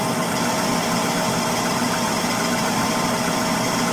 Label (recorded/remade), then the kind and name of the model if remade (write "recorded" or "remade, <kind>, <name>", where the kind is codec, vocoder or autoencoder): recorded